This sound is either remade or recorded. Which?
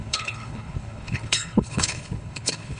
remade